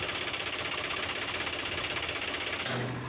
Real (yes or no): yes